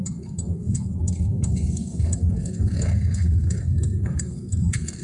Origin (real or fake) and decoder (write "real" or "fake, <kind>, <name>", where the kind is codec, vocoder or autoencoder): fake, codec, SNAC